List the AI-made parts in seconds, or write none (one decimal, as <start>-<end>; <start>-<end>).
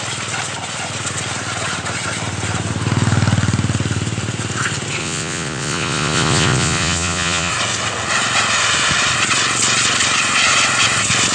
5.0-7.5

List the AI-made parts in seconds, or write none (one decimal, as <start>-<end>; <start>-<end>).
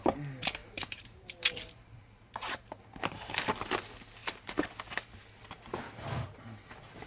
0.6-3.5; 4.2-5.6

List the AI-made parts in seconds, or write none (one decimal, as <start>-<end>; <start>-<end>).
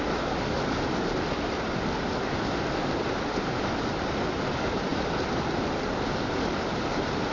none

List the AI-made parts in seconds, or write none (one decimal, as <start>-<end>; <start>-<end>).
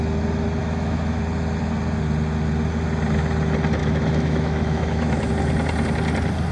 0.6-1.2; 3.8-5.3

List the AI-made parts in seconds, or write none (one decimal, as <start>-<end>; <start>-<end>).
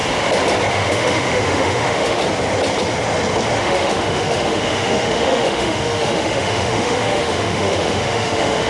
0.7-2.2; 3.6-8.7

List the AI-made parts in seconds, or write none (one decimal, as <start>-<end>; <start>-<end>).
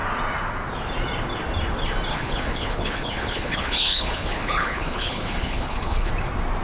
2.1-6.1